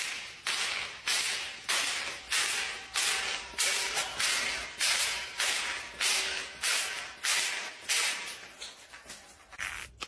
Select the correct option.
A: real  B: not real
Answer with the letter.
A